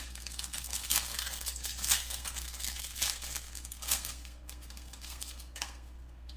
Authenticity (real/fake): fake